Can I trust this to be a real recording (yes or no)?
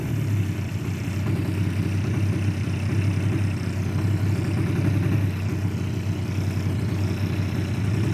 yes